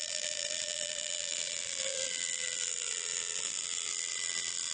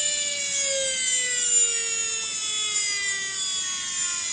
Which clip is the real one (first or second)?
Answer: second